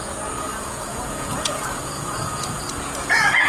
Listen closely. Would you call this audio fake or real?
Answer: fake